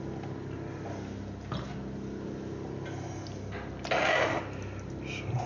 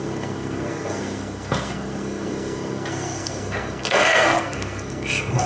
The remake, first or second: second